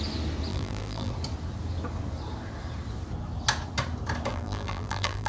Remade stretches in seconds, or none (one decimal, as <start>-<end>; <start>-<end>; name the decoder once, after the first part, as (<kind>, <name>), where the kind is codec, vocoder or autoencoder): 0.5-1.1 (vocoder, BigVGAN v2); 4.3-5.3